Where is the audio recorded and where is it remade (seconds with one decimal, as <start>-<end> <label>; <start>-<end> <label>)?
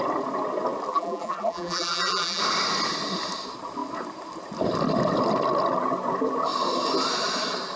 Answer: 0.0-0.9 recorded; 0.9-2.4 remade; 2.4-7.8 recorded